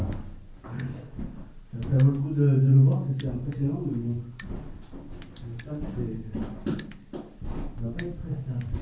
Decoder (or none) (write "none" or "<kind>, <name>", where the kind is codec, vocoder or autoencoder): none